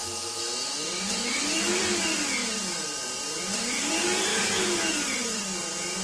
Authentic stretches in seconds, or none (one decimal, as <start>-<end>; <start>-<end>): 1.8-4.3; 4.9-6.0